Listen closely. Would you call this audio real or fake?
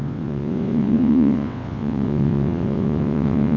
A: fake